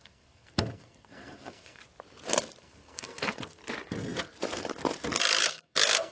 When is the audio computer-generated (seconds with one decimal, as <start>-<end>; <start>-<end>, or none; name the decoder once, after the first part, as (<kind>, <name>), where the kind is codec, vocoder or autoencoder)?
0.0-1.8 (codec, SNAC); 2.6-3.6; 5.4-6.1